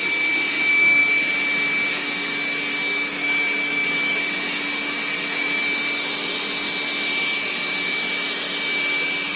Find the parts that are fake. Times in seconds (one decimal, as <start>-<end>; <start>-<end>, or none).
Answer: 0.7-1.3; 1.9-5.6